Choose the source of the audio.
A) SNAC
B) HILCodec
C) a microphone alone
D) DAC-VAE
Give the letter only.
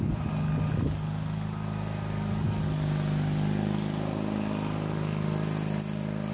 C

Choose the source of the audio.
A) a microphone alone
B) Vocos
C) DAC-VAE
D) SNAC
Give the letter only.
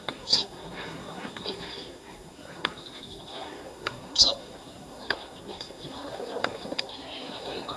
D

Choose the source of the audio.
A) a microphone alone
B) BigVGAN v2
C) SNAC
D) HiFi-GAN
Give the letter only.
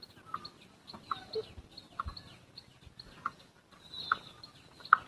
A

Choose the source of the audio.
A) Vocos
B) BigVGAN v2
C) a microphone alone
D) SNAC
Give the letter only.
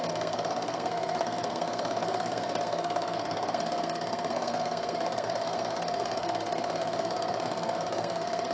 D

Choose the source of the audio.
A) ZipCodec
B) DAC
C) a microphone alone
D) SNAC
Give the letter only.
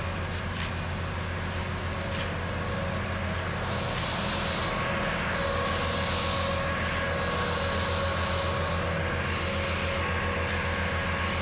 C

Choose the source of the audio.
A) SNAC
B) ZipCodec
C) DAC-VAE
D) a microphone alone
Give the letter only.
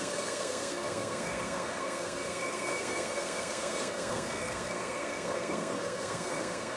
A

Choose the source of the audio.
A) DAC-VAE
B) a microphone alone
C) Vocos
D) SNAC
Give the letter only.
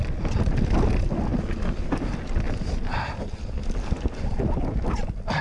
B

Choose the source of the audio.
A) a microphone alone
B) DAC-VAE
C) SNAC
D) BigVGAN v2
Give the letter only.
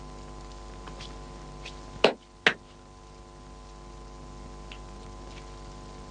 A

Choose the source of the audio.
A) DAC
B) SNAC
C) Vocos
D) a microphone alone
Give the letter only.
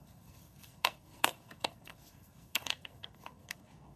B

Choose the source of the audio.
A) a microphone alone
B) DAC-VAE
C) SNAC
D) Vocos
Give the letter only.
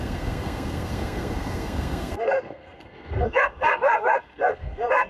C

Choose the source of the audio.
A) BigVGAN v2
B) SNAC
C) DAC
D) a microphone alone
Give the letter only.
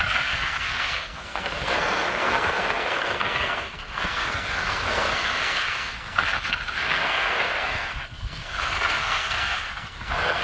B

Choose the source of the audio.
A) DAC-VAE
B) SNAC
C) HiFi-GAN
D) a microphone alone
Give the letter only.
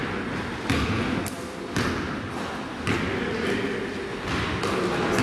D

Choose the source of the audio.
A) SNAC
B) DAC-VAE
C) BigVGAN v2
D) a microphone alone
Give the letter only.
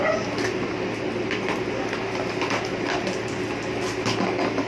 D